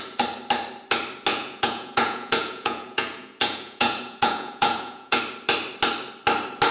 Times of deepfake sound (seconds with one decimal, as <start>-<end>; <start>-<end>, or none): 1.3-5.2